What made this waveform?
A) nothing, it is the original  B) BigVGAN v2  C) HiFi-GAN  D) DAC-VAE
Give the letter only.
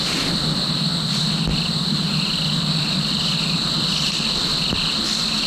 B